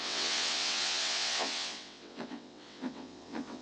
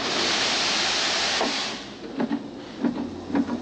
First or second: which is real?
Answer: second